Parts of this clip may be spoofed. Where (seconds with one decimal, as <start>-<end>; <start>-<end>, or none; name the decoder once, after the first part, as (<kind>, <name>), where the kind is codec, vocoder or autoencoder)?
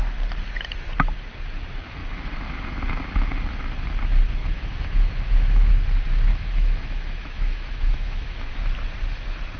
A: 4.4-5.7 (autoencoder, DAC-VAE); 6.3-8.5